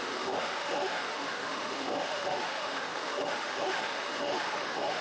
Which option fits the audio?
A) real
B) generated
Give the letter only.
B